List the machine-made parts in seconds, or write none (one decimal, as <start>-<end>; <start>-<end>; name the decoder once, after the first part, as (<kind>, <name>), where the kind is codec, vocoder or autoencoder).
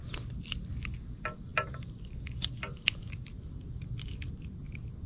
1.5-4.6 (vocoder, BigVGAN v2)